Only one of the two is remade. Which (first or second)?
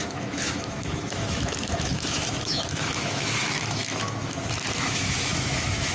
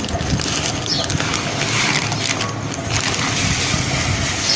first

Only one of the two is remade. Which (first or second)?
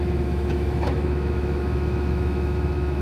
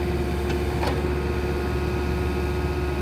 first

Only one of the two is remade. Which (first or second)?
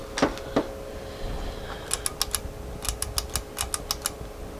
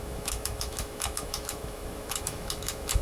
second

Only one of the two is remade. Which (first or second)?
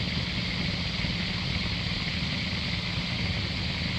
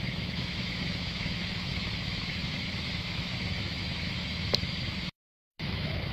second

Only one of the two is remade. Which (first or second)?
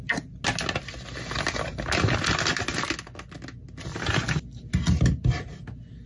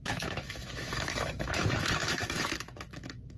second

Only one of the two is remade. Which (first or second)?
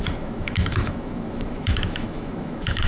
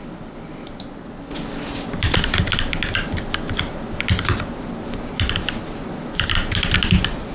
first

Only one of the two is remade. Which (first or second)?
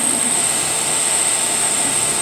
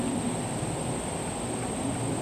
first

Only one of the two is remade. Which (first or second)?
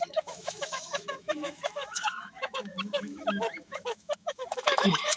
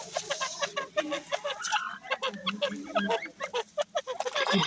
first